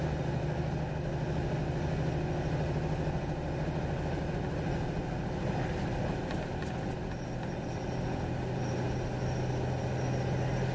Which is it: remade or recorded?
recorded